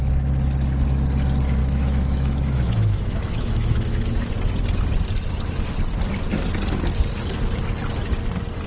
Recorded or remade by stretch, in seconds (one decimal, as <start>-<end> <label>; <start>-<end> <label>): 0.0-1.6 recorded; 1.6-4.3 remade; 4.3-8.7 recorded